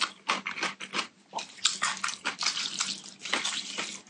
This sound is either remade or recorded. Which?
recorded